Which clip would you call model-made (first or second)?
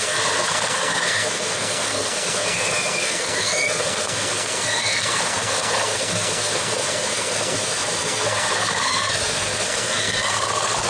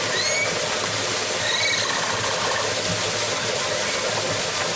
first